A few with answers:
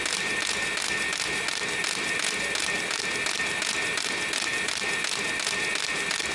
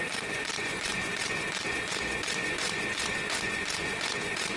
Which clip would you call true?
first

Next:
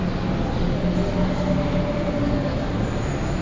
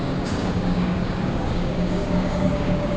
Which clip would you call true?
first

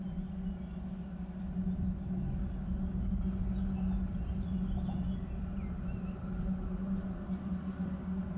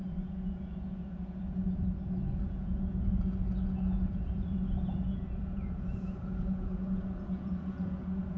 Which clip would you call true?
first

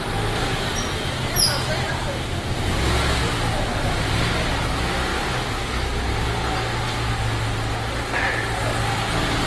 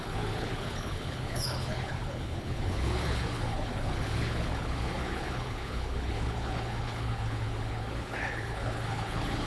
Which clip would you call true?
first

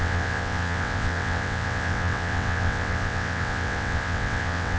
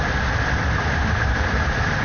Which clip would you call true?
second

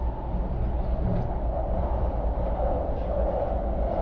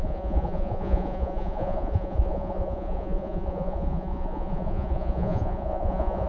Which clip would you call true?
first